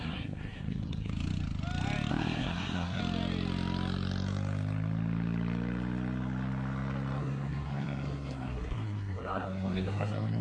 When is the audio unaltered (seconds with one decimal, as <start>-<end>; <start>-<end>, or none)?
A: 1.1-2.1; 3.0-7.2